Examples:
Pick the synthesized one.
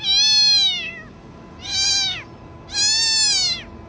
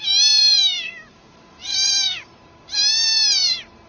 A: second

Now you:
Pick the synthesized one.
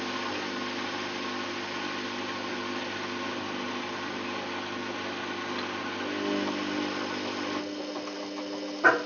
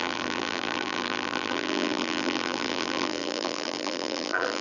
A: second